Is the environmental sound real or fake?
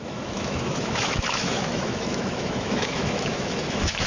fake